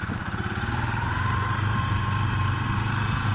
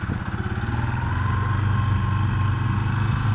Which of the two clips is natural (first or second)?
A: second